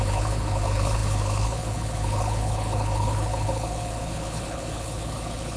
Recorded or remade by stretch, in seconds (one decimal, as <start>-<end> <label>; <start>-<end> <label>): 0.0-5.6 remade